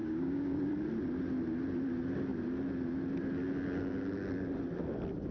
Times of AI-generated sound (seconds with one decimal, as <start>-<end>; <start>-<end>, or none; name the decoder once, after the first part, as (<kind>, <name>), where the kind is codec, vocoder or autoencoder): 0.0-0.7 (codec, DAC)